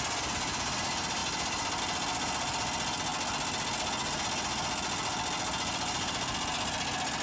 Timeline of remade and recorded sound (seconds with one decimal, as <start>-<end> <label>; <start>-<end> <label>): 0.0-7.2 recorded